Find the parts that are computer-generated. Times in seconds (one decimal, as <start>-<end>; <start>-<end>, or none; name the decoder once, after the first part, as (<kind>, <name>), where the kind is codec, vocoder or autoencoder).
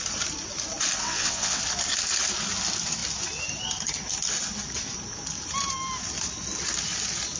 1.0-1.6 (vocoder, WaveNeXt)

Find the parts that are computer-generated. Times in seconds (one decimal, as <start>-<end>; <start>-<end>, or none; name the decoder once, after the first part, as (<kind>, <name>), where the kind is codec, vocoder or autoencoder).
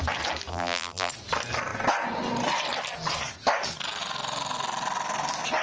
0.5-1.1 (vocoder, BigVGAN v2)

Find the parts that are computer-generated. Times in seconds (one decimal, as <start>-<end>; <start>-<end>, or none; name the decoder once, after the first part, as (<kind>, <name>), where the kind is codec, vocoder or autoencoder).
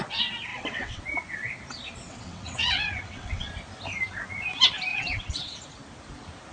0.5-1.0 (vocoder, WaveNeXt); 2.1-3.5; 4.9-5.6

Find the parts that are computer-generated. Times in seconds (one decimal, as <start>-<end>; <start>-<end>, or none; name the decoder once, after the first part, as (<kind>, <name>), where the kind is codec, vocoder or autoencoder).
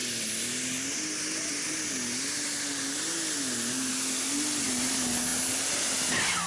none